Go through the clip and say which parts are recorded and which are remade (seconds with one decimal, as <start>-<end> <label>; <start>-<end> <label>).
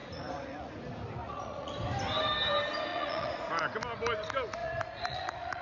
0.0-0.7 remade; 0.7-1.2 recorded; 1.2-1.7 remade; 1.7-2.9 recorded; 2.9-3.5 remade; 3.5-4.6 recorded; 4.6-5.6 remade